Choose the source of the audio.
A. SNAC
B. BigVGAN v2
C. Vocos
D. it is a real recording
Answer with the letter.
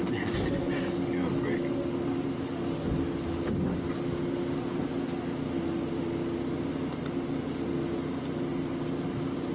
D